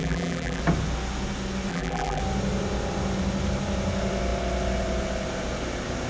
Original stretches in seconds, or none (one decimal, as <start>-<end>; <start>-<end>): 0.6-1.7; 2.2-6.1